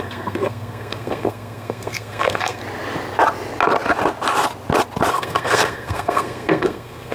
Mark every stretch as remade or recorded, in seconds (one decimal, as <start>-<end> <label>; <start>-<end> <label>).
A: 0.0-2.6 remade; 2.6-5.1 recorded; 5.1-7.1 remade